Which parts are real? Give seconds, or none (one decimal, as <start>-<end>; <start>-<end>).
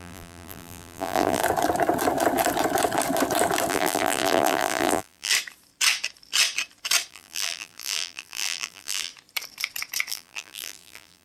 1.4-3.7; 5.3-7.1; 9.1-10.1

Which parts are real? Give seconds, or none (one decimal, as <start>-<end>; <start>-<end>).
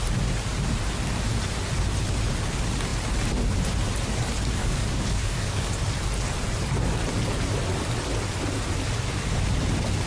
0.0-4.6; 5.7-10.1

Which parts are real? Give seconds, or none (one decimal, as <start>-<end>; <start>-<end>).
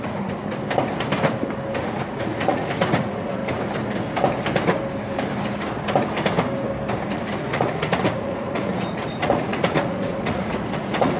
0.4-1.8; 3.4-7.1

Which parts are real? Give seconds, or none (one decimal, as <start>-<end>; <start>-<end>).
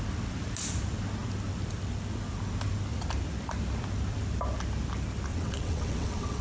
0.0-5.3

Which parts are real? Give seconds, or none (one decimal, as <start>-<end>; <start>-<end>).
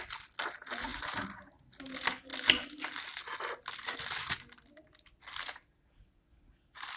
0.0-7.0